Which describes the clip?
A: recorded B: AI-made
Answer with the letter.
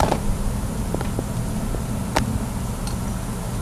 A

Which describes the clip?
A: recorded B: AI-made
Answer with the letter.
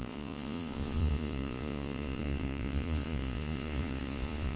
B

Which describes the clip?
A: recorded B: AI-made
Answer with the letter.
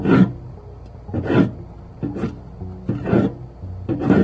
A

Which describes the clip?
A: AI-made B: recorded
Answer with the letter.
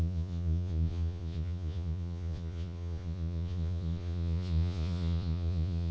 A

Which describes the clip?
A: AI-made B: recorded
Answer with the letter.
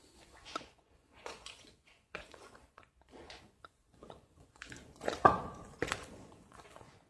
A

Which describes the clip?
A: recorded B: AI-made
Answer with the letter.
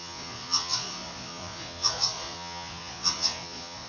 B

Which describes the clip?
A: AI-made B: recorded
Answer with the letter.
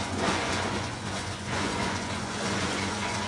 A